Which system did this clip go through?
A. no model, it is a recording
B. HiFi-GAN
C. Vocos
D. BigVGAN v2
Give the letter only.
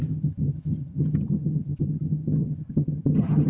B